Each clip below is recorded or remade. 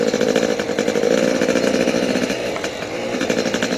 recorded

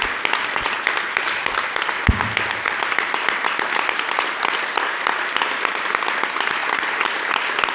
recorded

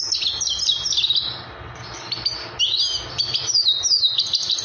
recorded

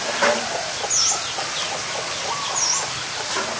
recorded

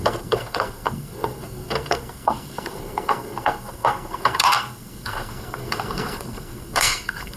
remade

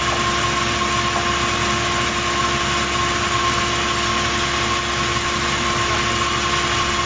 recorded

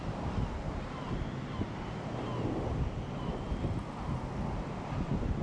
recorded